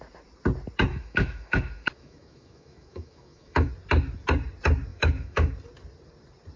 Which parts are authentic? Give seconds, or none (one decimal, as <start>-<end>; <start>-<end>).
0.0-0.9; 3.7-4.9; 5.5-6.6